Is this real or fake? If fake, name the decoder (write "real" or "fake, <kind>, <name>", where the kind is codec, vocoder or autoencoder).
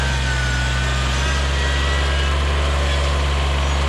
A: real